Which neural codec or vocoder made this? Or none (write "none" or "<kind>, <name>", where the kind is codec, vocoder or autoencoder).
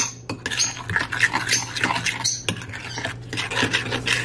none